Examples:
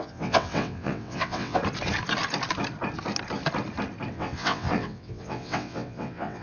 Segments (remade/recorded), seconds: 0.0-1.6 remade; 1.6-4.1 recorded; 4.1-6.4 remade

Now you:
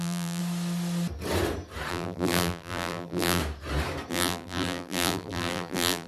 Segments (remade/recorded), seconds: 0.0-0.4 remade; 0.4-1.9 recorded; 1.9-3.4 remade; 3.4-4.1 recorded; 4.1-6.1 remade

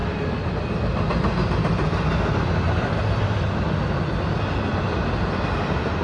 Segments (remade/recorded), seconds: 0.0-6.0 recorded

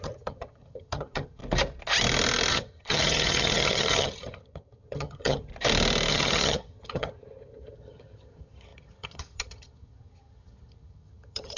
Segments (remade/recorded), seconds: 0.0-1.4 remade; 1.4-2.5 recorded; 2.5-5.5 remade; 5.5-6.1 recorded; 6.1-11.6 remade

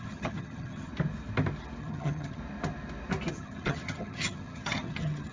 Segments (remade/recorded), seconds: 0.0-0.9 remade; 0.9-1.8 recorded; 1.8-2.4 remade; 2.4-3.3 recorded; 3.3-5.3 remade

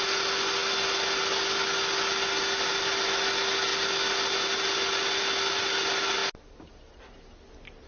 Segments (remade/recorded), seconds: 0.0-7.9 recorded

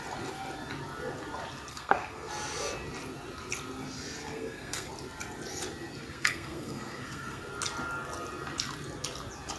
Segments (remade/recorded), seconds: 0.0-1.7 recorded; 1.7-2.3 remade; 2.3-4.2 recorded; 4.2-4.9 remade; 4.9-6.0 recorded; 6.0-7.5 remade; 7.5-9.6 recorded